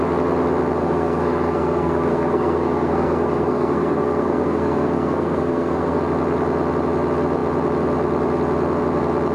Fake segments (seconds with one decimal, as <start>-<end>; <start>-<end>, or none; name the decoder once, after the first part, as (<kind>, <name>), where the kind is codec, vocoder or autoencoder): 0.8-6.0 (codec, SNAC)